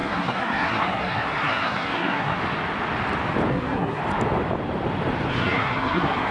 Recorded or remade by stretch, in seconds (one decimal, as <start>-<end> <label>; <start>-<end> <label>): 0.0-2.4 remade; 2.4-3.5 recorded; 3.5-4.0 remade; 4.0-5.3 recorded; 5.3-6.3 remade